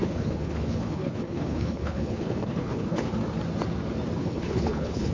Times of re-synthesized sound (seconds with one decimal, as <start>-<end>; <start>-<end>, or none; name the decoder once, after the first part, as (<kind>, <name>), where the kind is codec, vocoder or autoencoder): 0.0-3.1 (codec, HILCodec); 4.2-5.1